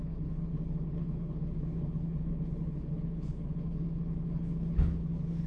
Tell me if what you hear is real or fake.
fake